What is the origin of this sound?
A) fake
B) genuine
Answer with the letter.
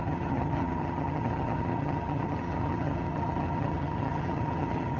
A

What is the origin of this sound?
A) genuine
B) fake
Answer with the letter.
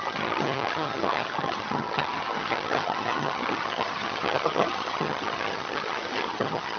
B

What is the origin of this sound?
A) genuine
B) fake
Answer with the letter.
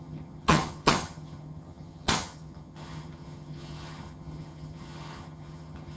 B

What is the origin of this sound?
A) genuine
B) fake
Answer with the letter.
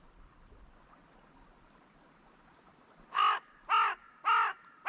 A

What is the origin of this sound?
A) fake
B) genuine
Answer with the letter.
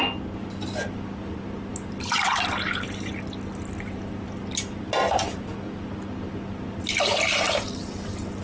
B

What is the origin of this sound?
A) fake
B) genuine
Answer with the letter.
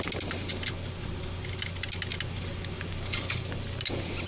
B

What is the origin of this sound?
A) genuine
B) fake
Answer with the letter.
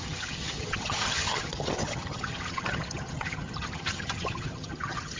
B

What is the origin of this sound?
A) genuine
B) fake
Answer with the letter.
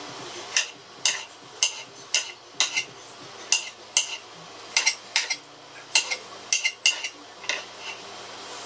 A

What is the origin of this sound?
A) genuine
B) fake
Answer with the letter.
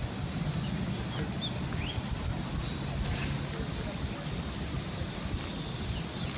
A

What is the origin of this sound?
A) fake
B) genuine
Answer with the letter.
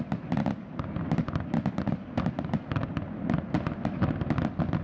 B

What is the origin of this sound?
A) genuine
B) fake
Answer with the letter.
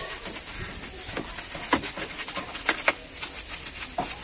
A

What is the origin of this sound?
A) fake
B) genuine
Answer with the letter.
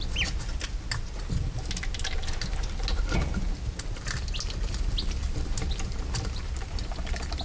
B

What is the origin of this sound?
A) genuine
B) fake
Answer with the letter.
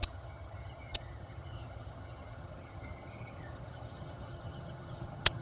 B